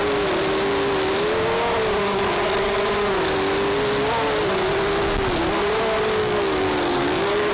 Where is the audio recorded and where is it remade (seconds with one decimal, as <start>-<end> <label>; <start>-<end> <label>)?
0.0-2.0 recorded; 2.0-2.8 remade; 2.8-6.2 recorded; 6.2-7.5 remade